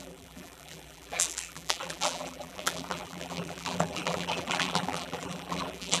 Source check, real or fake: fake